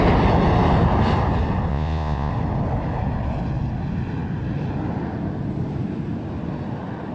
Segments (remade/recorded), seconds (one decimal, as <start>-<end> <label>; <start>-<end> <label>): 0.0-1.7 recorded; 1.7-2.3 remade; 2.3-7.1 recorded